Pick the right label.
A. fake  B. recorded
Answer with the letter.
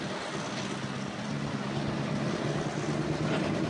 B